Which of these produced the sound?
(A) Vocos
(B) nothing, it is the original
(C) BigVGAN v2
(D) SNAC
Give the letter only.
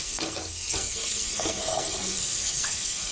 D